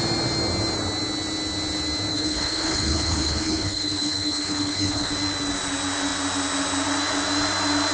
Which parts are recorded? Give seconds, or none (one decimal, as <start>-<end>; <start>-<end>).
0.0-2.1; 5.1-7.9